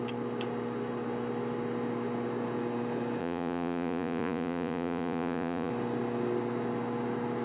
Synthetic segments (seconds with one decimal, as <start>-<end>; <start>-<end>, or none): 3.2-5.7

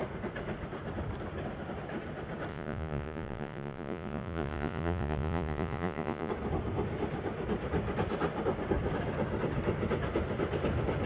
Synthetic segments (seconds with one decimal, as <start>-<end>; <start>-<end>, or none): 2.5-6.3

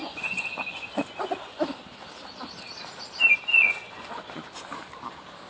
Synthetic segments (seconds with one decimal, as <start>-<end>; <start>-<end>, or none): 0.0-1.6; 3.5-4.5

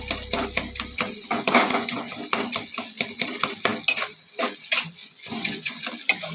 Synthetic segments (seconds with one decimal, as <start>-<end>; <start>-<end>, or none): 1.2-2.1; 5.0-5.8

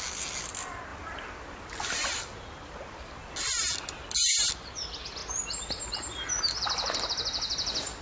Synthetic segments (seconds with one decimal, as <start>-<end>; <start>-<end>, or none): none

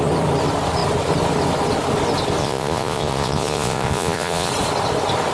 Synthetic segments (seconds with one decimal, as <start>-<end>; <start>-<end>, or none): 2.4-4.5